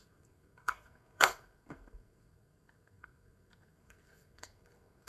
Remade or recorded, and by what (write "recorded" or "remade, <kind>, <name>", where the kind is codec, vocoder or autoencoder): remade, codec, SNAC